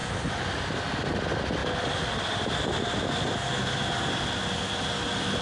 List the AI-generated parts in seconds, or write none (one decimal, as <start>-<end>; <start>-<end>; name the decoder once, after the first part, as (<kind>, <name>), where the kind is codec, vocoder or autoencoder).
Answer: none